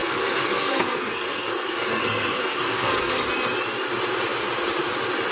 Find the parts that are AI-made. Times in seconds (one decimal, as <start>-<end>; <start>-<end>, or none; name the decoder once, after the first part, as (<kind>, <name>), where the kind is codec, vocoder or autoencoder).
0.0-3.2 (codec, SNAC)